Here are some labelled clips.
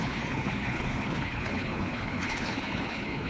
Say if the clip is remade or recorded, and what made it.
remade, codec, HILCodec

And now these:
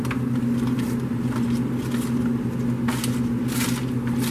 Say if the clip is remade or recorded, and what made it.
recorded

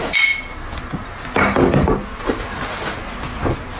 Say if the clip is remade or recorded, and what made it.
recorded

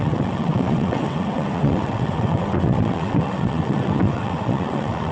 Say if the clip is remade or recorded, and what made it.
remade, vocoder, WaveNeXt